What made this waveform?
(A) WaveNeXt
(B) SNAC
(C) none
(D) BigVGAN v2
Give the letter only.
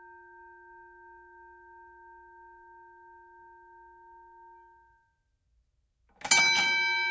C